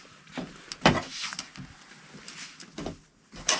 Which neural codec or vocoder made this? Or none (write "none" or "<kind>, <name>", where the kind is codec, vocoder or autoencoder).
none